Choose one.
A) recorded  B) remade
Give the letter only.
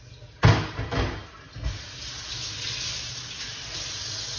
A